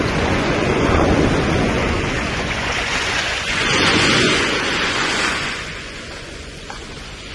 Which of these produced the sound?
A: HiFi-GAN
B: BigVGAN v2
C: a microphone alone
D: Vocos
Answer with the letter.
D